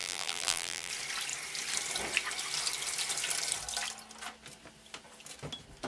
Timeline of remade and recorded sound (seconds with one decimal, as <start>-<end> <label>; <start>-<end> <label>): 0.0-0.9 remade; 0.9-5.9 recorded